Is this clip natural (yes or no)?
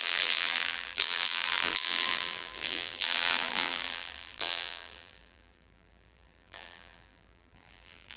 no